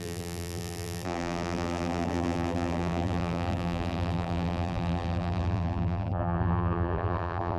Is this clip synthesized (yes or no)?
yes